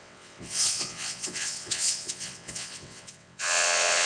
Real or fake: fake